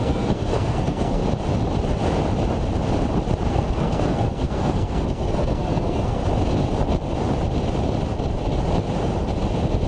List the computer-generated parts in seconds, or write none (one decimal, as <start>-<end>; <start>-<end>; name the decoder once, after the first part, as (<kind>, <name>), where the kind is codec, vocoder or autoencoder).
0.0-1.2 (codec, SNAC); 3.5-6.2